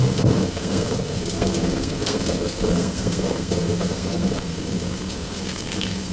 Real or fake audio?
fake